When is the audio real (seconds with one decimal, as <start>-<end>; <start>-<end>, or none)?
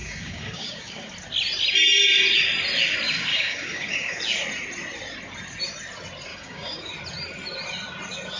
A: 1.1-3.3; 4.2-6.3; 6.9-8.4